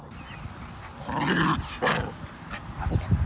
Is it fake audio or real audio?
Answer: real